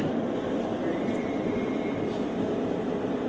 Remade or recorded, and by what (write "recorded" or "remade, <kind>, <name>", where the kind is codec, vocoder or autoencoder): recorded